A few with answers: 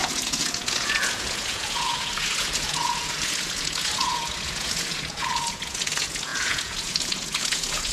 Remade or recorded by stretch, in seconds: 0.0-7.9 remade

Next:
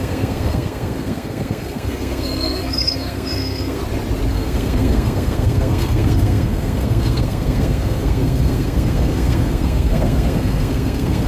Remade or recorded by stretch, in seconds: 0.0-3.8 remade; 3.8-4.3 recorded; 4.3-11.3 remade

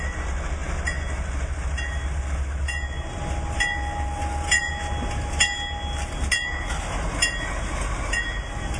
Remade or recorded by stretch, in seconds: 0.0-8.8 recorded

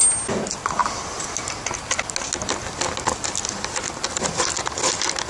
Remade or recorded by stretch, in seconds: 0.0-5.3 recorded

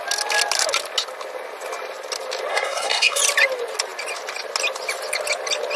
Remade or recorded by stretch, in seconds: 0.0-2.5 recorded; 2.5-3.2 remade; 3.2-5.8 recorded